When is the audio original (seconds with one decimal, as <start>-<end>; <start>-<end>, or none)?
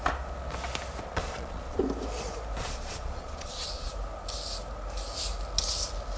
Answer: 0.0-1.1; 1.8-2.6; 3.9-6.2